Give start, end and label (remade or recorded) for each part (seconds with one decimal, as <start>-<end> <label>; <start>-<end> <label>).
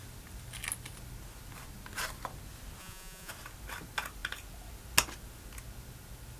0.0-2.8 recorded; 2.8-3.3 remade; 3.3-6.4 recorded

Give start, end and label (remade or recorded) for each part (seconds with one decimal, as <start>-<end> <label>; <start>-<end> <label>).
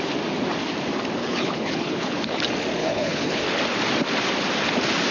0.0-1.2 recorded; 1.2-2.4 remade; 2.4-2.8 recorded; 2.8-3.4 remade; 3.4-5.1 recorded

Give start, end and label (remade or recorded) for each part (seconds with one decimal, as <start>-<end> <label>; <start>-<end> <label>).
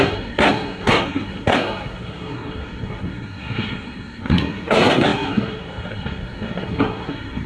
0.0-7.5 remade